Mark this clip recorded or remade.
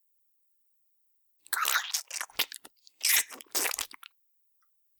recorded